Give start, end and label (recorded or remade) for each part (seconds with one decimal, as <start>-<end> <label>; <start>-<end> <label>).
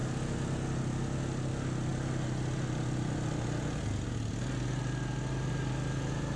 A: 0.0-6.4 recorded